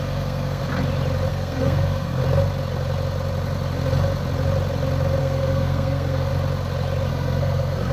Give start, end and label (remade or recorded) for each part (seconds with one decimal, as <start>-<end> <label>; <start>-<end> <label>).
0.0-0.6 remade; 0.6-1.3 recorded; 1.3-2.2 remade; 2.2-5.2 recorded; 5.2-6.3 remade; 6.3-7.1 recorded; 7.1-7.9 remade